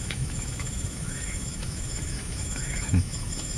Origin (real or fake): fake